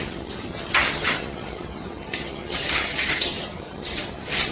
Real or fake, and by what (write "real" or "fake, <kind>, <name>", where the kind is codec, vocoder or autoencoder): fake, vocoder, HiFi-GAN